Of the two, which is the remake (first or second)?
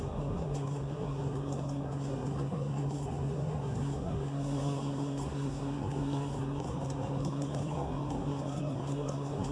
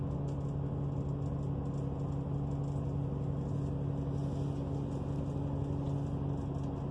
first